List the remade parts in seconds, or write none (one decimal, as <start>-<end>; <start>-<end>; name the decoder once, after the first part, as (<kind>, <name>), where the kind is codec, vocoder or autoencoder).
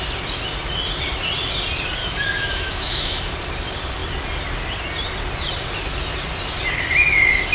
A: 2.0-3.2 (autoencoder, DAC-VAE)